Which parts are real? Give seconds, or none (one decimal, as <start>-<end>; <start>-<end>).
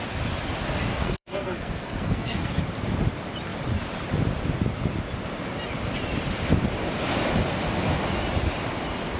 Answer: 0.0-0.9; 2.6-9.2